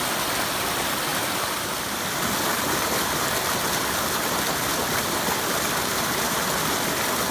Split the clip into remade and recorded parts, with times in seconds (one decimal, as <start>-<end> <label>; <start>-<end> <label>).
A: 0.0-1.1 recorded; 1.1-5.5 remade; 5.5-5.9 recorded; 5.9-6.7 remade; 6.7-7.3 recorded